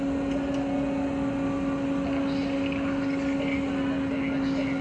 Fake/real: real